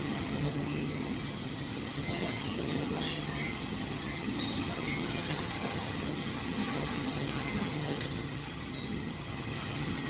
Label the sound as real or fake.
fake